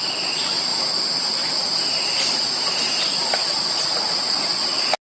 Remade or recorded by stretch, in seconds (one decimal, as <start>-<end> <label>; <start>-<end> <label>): 0.0-5.0 recorded